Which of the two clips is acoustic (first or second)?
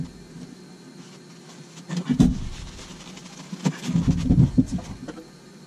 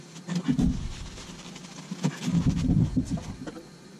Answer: first